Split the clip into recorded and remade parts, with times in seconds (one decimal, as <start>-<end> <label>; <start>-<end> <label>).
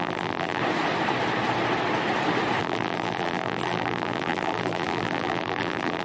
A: 0.0-0.6 remade; 0.6-2.6 recorded; 2.6-6.0 remade